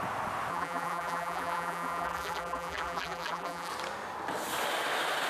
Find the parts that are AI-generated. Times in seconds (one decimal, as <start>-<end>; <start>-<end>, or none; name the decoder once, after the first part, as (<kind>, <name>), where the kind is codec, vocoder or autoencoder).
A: 0.5-3.7 (vocoder, BigVGAN v2)